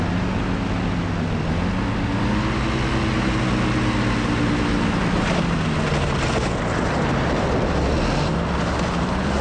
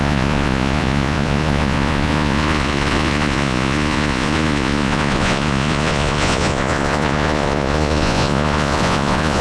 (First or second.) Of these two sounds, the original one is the first